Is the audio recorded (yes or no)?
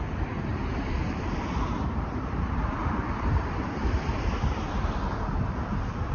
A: no